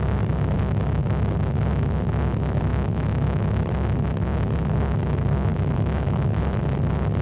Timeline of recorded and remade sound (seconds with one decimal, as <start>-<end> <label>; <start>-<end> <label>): 0.0-2.7 recorded; 2.7-3.5 remade; 3.5-5.5 recorded; 5.5-6.4 remade; 6.4-7.2 recorded

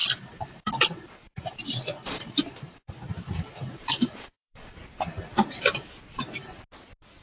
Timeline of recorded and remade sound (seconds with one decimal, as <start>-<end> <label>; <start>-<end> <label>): 0.0-4.8 remade; 4.8-7.2 recorded

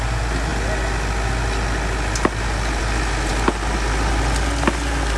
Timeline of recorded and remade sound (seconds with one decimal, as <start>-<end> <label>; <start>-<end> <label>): 0.0-5.2 recorded